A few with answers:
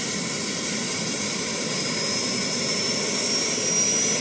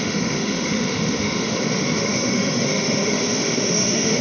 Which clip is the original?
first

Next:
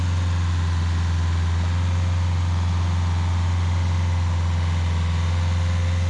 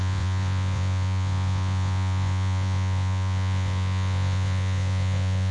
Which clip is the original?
first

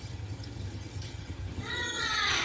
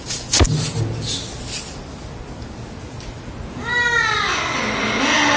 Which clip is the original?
second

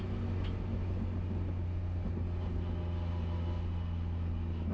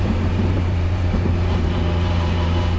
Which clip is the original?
first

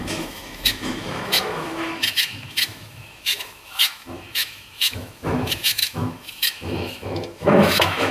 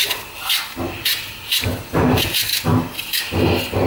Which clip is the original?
second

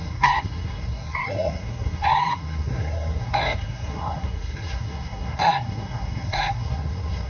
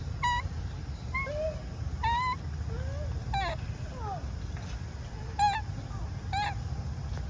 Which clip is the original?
second